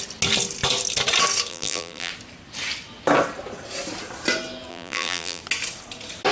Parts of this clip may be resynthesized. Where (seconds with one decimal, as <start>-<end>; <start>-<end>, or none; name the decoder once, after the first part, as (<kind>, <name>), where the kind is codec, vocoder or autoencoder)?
1.5-2.1 (vocoder, BigVGAN v2); 4.7-5.4